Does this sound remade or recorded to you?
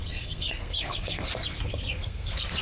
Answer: remade